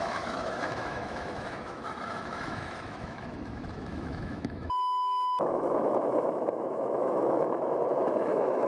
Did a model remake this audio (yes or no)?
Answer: yes